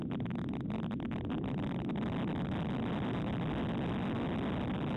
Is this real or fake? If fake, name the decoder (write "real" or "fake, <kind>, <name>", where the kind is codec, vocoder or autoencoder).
real